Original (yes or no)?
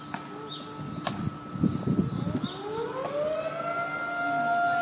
yes